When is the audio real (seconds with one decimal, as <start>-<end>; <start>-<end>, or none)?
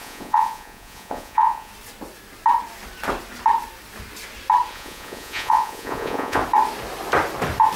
1.7-4.7; 6.4-7.8